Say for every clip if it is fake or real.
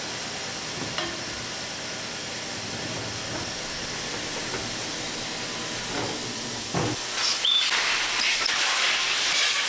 real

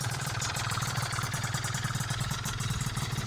fake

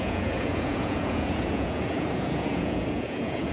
fake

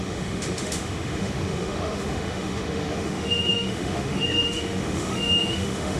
fake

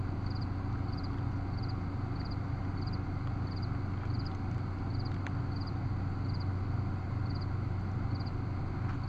real